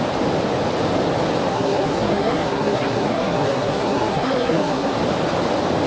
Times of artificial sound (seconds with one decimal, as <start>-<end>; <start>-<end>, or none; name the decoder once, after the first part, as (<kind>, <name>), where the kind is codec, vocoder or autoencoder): 1.5-5.0 (codec, SNAC)